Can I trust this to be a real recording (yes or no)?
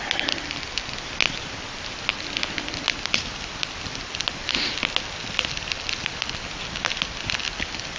yes